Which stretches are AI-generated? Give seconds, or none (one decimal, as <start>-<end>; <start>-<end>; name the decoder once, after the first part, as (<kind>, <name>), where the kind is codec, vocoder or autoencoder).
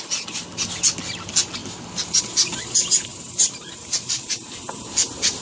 1.6-2.2 (vocoder, BigVGAN v2); 3.1-4.3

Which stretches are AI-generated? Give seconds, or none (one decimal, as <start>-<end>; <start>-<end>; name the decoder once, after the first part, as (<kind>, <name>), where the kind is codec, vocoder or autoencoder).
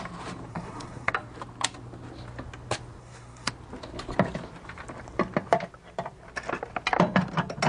0.5-1.1 (codec, SNAC); 3.0-3.5